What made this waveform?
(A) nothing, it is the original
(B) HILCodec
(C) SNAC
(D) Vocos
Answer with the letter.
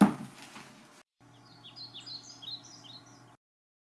A